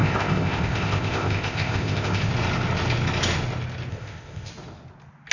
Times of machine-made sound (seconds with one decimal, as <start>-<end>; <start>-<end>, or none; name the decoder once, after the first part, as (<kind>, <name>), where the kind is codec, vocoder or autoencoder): 0.0-2.3 (codec, ZipCodec); 3.9-4.5